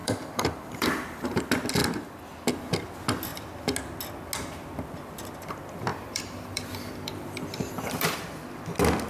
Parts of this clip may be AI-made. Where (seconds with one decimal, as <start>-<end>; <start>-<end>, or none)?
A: 0.0-1.4; 5.9-8.4